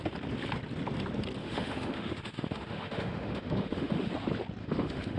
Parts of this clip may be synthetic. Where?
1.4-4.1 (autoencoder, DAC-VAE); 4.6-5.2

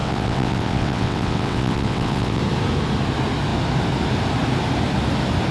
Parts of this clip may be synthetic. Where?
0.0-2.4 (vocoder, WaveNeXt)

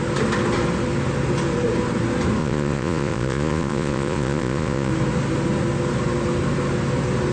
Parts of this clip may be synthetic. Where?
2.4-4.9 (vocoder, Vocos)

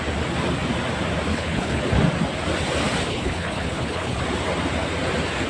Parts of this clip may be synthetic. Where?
1.3-1.8 (codec, HILCodec); 3.1-4.2

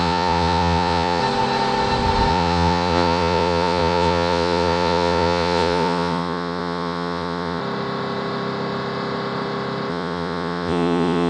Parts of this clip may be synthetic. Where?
0.0-1.2 (vocoder, Vocos); 2.3-7.6; 9.9-11.3

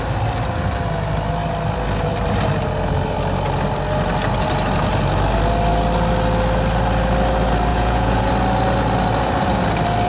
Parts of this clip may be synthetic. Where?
7.7-8.3 (vocoder, Vocos)

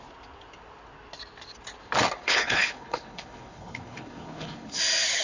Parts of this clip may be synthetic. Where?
2.2-4.8 (codec, HILCodec)

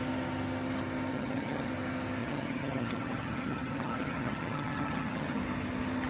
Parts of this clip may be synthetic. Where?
1.1-1.7 (vocoder, HiFi-GAN); 2.2-5.4